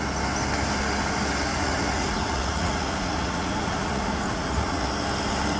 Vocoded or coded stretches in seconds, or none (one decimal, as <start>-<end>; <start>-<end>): 1.5-4.9